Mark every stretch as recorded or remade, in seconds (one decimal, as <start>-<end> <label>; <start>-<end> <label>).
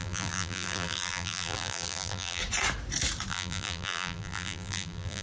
0.0-2.4 remade; 2.4-3.3 recorded; 3.3-5.2 remade